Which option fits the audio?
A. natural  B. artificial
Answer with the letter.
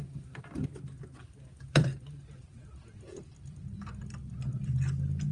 A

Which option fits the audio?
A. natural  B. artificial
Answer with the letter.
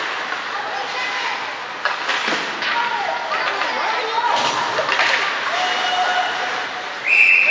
A